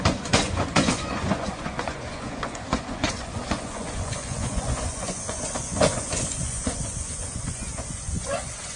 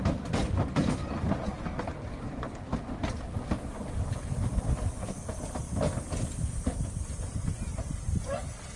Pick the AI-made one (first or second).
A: first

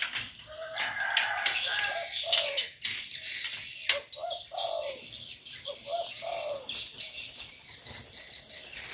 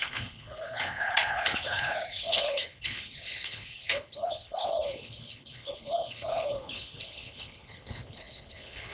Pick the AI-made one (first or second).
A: second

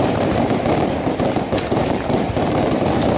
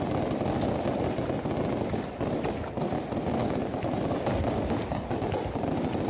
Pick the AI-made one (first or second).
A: first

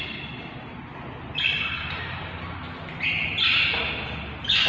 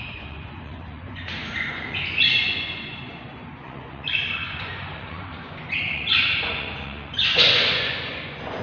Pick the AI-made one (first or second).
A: second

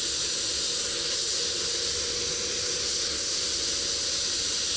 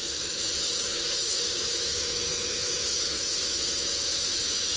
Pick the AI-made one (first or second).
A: second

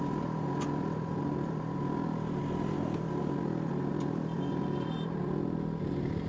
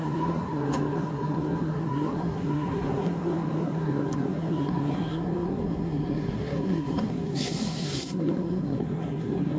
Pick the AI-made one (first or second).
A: second